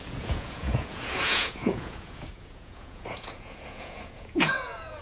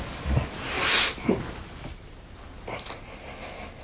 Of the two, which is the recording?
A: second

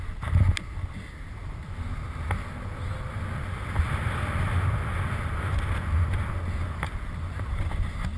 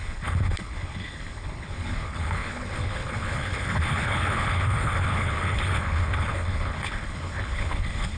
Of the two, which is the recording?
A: first